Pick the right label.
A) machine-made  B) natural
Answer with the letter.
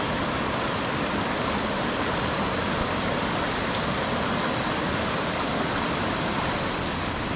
B